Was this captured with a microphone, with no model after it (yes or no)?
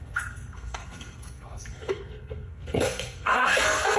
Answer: no